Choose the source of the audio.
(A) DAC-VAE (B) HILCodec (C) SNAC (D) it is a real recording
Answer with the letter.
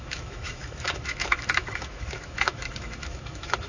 A